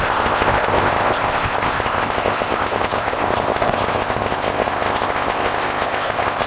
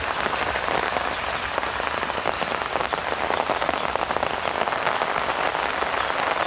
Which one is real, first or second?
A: second